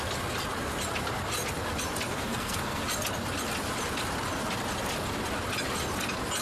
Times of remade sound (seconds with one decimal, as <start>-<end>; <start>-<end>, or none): 2.1-2.8